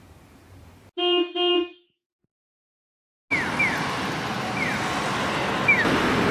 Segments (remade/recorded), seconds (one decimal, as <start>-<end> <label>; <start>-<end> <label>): 0.0-1.6 recorded; 1.6-2.2 remade; 2.2-6.3 recorded